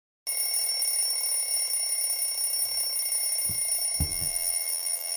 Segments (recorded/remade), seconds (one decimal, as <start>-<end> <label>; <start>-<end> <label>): 0.0-4.1 recorded; 4.1-5.2 remade